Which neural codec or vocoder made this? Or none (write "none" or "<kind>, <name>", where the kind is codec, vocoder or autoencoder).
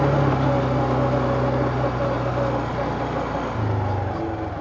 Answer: none